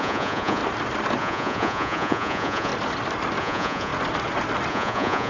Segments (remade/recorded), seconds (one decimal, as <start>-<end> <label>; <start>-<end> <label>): 0.0-0.6 remade; 0.6-1.2 recorded; 1.2-2.7 remade; 2.7-3.4 recorded; 3.4-3.9 remade; 3.9-4.7 recorded; 4.7-5.3 remade